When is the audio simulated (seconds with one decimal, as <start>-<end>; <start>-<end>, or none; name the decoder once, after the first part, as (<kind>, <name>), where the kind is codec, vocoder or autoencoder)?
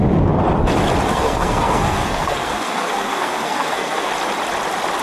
1.1-4.1 (codec, SNAC)